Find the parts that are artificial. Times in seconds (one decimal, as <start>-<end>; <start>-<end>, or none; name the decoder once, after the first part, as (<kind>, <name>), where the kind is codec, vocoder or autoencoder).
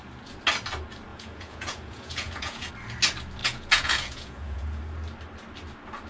1.1-2.7 (vocoder, Vocos); 3.4-4.8